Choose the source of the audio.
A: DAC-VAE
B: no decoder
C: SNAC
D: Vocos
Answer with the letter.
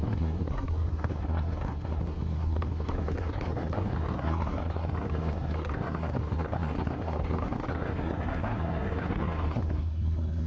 C